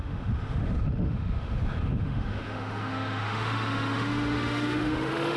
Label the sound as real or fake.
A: fake